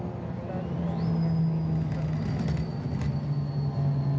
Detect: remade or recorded recorded